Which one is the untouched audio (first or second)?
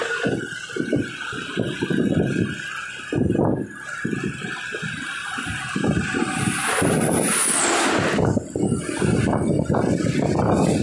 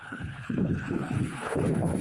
first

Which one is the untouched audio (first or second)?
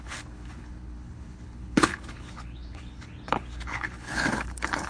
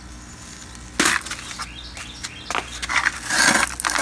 second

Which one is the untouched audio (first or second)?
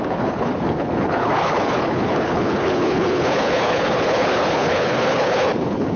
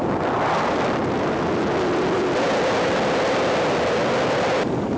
second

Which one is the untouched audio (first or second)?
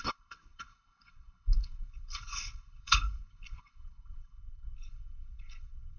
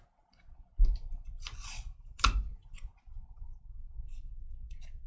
second